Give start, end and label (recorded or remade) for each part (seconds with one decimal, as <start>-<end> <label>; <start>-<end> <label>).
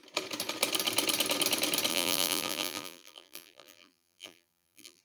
0.0-1.9 recorded; 1.9-5.0 remade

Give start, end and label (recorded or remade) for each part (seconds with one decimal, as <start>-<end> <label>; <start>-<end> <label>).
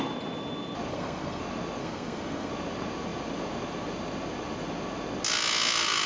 0.0-0.9 recorded; 0.9-1.4 remade; 1.4-1.8 recorded; 1.8-2.5 remade; 2.5-6.1 recorded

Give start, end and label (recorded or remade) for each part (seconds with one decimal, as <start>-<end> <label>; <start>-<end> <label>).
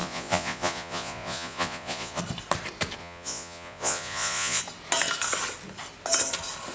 0.0-2.2 remade; 2.2-3.0 recorded; 3.0-4.6 remade; 4.6-6.7 recorded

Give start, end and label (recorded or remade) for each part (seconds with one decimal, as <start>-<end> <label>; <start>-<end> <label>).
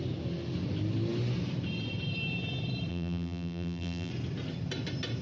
0.0-2.9 recorded; 2.9-4.1 remade; 4.1-5.2 recorded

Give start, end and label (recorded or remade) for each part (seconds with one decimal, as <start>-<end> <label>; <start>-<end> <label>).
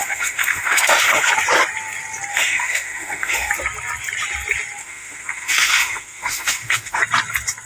0.0-1.3 remade; 1.3-2.3 recorded; 2.3-3.5 remade; 3.5-4.8 recorded; 4.8-7.0 remade; 7.0-7.7 recorded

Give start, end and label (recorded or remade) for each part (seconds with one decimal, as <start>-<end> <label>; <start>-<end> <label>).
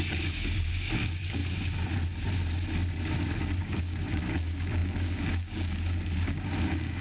0.0-1.4 remade; 1.4-3.6 recorded; 3.6-7.0 remade